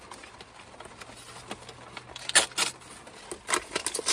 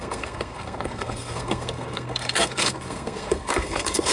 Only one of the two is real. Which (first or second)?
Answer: first